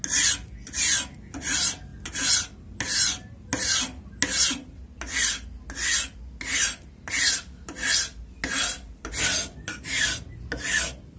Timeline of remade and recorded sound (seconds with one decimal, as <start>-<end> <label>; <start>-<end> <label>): 0.0-11.2 recorded